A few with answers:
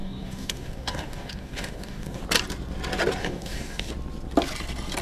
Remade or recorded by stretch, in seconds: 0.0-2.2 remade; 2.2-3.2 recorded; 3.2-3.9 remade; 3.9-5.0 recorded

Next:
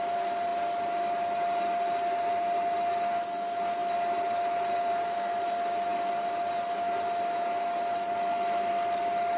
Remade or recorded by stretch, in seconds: 0.0-9.4 recorded

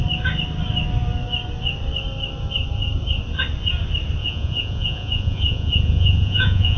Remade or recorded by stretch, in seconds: 0.0-4.2 recorded; 4.2-6.8 remade